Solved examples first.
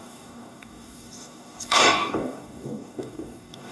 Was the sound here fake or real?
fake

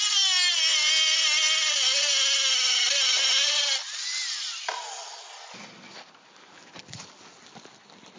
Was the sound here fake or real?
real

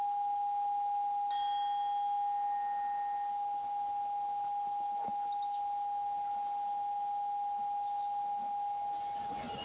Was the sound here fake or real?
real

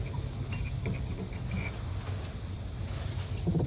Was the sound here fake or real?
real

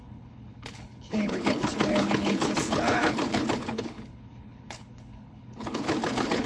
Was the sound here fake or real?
fake